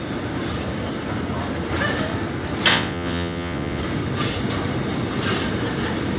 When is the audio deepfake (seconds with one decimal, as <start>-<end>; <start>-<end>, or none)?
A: 2.7-3.8